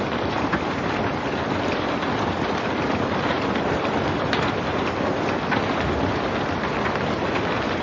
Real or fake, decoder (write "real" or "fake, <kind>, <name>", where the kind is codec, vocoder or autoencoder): real